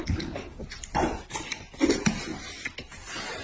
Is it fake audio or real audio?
real